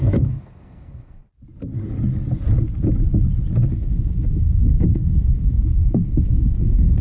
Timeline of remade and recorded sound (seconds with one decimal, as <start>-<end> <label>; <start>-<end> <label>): 0.0-1.2 remade; 1.2-3.7 recorded; 3.7-7.0 remade